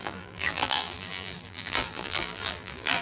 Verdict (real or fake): fake